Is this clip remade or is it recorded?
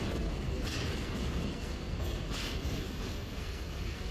remade